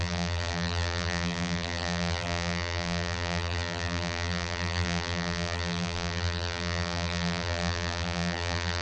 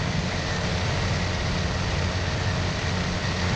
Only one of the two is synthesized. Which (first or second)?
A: first